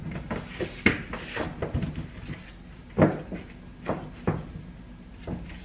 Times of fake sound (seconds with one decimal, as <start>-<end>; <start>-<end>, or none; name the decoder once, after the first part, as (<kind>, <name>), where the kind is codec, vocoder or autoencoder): none